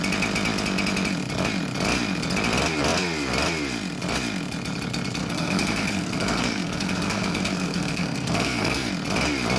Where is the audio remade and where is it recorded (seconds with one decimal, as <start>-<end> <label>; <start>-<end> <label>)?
0.0-5.2 recorded; 5.2-8.9 remade; 8.9-9.6 recorded